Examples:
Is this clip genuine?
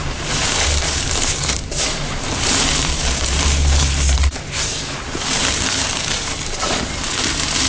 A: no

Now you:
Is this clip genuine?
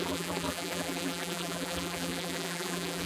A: no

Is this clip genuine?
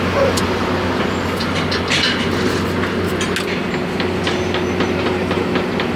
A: yes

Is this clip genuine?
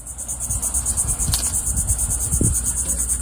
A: yes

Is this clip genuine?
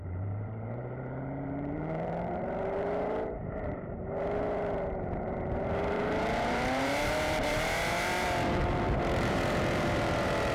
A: no